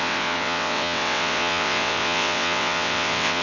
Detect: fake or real fake